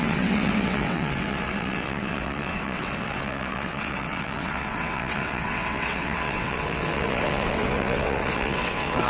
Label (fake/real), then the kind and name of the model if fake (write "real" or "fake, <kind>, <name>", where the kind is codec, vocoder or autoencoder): fake, vocoder, WaveNeXt